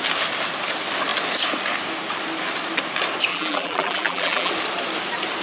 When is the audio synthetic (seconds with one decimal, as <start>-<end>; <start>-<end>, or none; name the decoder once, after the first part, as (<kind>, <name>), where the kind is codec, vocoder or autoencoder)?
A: 3.3-4.5 (vocoder, BigVGAN v2)